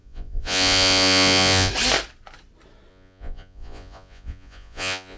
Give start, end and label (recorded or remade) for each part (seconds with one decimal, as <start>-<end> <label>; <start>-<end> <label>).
0.0-1.7 remade; 1.7-2.9 recorded; 2.9-5.2 remade